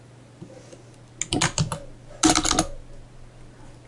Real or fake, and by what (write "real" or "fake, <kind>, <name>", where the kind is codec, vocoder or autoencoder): real